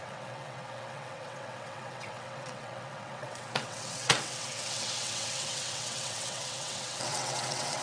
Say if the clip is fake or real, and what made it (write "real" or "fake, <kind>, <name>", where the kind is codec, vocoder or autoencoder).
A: fake, vocoder, WaveNeXt